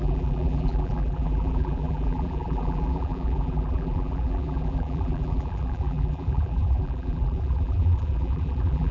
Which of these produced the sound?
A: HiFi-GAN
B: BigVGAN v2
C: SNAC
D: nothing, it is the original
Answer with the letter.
B